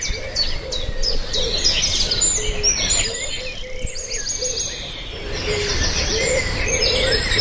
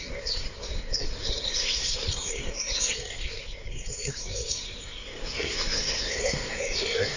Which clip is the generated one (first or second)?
second